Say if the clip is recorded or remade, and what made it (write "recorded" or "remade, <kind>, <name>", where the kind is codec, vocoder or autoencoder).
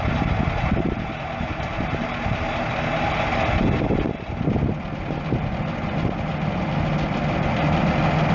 recorded